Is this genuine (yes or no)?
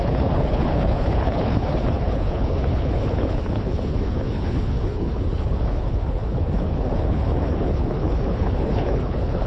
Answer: no